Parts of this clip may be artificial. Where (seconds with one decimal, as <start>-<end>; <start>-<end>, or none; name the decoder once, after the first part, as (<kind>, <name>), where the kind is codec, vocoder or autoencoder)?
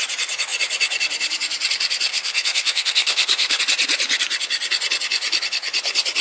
2.1-3.6 (codec, SNAC)